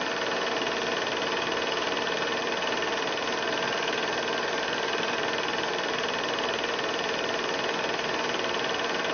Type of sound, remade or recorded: remade